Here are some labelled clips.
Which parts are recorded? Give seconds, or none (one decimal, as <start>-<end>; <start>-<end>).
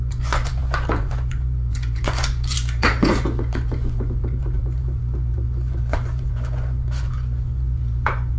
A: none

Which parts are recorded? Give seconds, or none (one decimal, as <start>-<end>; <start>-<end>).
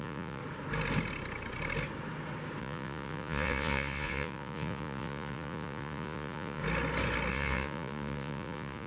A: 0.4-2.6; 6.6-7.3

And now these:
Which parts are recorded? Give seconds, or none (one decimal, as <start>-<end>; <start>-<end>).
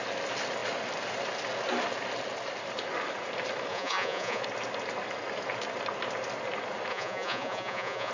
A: 0.0-3.7; 4.4-6.9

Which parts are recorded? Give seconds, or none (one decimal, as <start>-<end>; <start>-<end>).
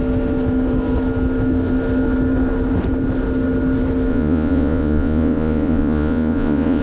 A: 0.0-4.1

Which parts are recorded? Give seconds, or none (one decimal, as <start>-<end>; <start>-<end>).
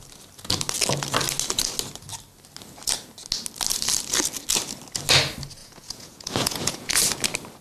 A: 0.0-5.6; 6.9-7.6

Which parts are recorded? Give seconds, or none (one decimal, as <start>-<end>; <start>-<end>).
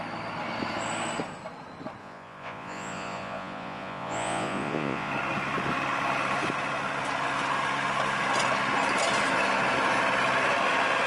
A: 0.0-2.0; 5.1-11.1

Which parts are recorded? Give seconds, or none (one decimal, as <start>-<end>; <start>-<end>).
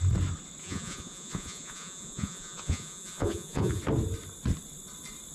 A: 0.0-0.6; 3.8-5.3